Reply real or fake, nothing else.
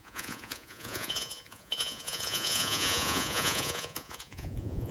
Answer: fake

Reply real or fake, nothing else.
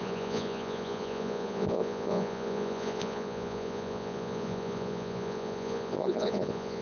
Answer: fake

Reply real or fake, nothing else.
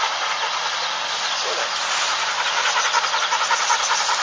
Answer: real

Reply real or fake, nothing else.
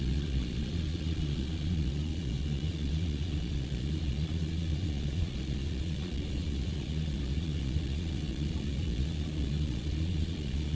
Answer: fake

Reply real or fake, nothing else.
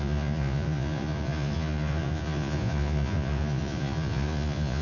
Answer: fake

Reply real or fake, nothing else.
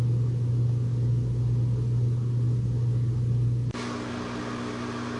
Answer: real